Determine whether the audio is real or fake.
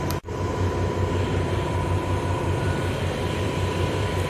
fake